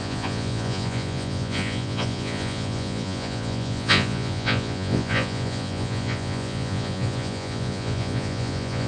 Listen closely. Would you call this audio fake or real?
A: fake